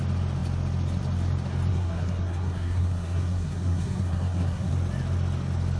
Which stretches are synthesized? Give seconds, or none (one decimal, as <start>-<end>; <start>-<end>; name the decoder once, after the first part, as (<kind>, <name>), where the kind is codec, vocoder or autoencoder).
1.7-4.7 (codec, SNAC)